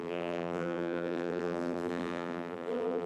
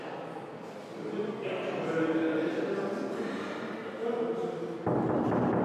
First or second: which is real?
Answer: second